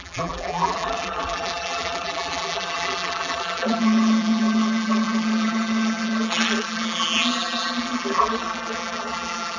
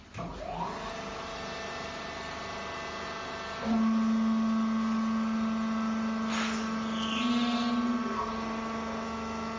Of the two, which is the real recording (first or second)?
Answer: second